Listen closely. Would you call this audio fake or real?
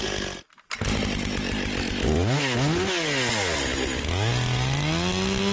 real